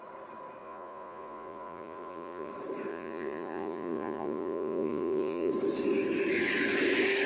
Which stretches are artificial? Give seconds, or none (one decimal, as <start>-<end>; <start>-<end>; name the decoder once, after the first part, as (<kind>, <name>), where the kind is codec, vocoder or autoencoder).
0.6-2.5 (vocoder, Vocos); 2.9-5.5